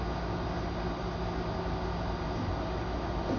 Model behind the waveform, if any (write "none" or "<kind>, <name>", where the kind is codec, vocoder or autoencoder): none